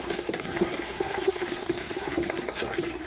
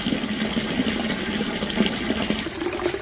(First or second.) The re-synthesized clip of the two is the first